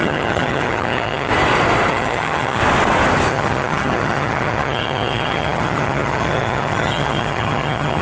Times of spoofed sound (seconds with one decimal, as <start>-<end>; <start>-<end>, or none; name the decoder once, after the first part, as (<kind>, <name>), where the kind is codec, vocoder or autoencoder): 0.0-1.3 (vocoder, HiFi-GAN); 1.9-2.6; 3.3-8.0